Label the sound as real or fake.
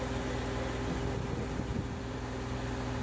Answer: real